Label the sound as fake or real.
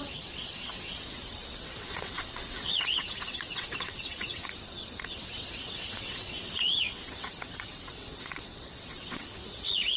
fake